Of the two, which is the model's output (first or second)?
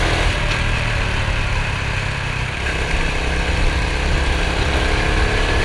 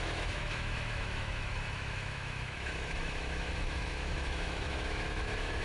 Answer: second